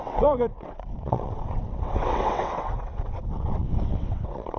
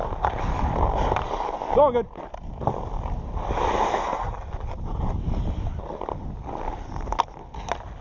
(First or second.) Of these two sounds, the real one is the second